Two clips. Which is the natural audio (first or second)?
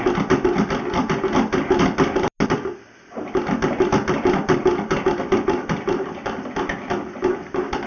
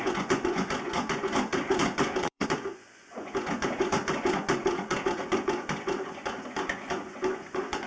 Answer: first